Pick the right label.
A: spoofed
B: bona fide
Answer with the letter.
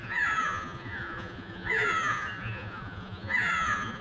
A